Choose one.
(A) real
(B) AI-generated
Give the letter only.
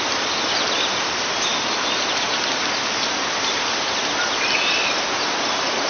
A